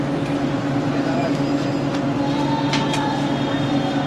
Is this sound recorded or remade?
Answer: recorded